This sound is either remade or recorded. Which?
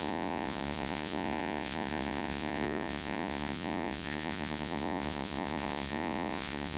remade